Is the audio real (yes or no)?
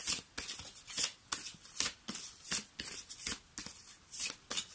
yes